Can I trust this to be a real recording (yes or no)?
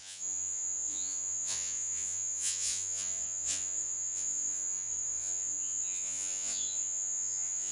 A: no